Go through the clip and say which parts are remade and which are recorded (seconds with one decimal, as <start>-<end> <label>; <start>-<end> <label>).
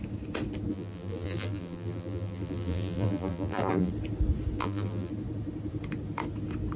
0.0-0.7 recorded; 0.7-3.9 remade; 3.9-4.6 recorded; 4.6-5.1 remade; 5.1-6.8 recorded